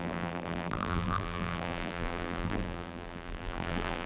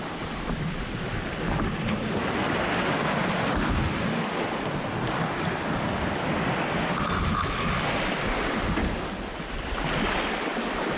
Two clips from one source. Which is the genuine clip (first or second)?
second